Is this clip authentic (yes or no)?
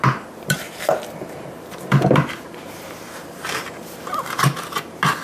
no